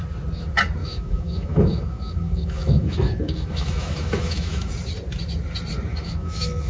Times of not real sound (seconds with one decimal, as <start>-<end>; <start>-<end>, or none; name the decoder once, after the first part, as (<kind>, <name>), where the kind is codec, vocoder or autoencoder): 0.8-4.7 (autoencoder, DAC-VAE); 5.9-6.7